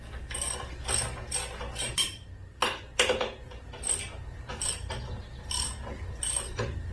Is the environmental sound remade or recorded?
recorded